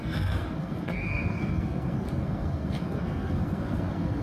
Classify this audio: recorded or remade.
remade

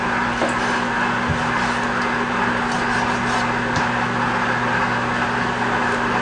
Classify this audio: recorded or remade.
recorded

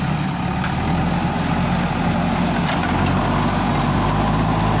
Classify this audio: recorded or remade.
recorded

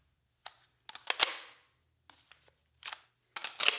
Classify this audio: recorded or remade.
recorded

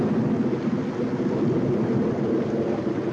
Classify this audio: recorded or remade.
recorded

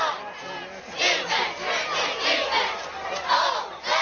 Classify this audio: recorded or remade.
recorded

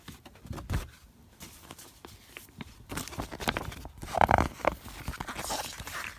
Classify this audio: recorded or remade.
remade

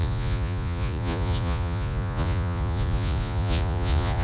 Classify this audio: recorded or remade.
remade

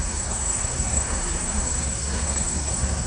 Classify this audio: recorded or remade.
remade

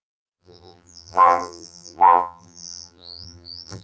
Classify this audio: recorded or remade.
remade